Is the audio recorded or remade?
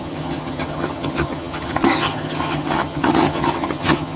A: remade